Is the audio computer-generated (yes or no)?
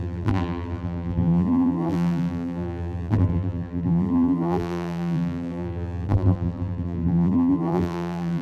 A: yes